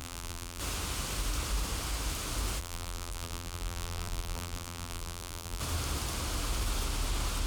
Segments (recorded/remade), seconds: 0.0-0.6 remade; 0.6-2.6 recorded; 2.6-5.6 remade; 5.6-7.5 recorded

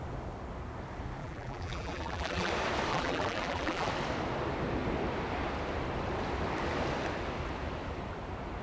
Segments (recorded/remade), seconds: 0.0-1.2 recorded; 1.2-2.5 remade; 2.5-2.9 recorded; 2.9-3.9 remade; 3.9-8.6 recorded

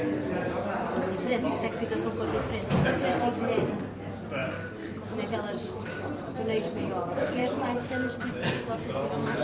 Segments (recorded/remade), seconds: 0.0-7.4 recorded; 7.4-7.9 remade; 7.9-9.4 recorded

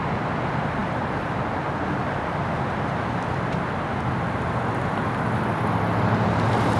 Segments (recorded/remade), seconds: 0.0-6.8 recorded

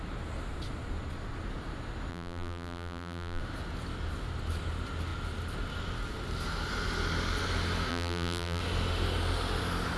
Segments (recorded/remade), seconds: 0.0-2.1 recorded; 2.1-3.4 remade; 3.4-7.9 recorded; 7.9-8.6 remade; 8.6-10.0 recorded

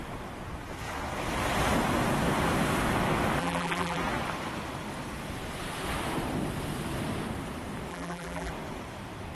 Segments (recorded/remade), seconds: 0.0-3.4 recorded; 3.4-4.0 remade; 4.0-7.9 recorded; 7.9-8.5 remade; 8.5-9.3 recorded